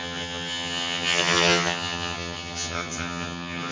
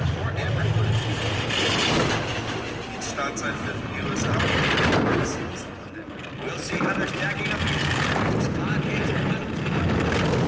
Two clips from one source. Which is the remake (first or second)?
first